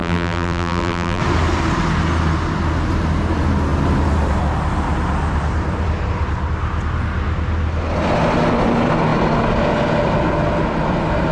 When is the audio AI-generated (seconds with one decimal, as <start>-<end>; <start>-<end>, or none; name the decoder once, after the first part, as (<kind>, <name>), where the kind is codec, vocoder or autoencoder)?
0.0-1.2 (vocoder, BigVGAN v2)